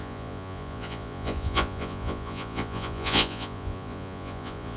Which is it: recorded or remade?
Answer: remade